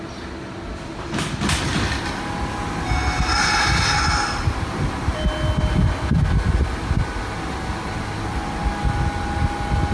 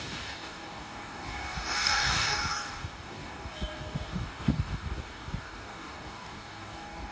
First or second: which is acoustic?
first